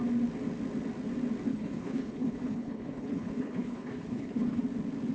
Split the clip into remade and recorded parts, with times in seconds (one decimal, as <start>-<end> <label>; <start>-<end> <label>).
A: 0.0-1.5 recorded; 1.5-4.6 remade; 4.6-5.1 recorded